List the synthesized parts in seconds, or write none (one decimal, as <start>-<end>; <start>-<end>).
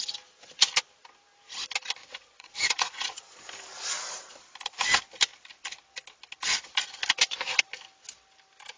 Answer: 2.0-3.4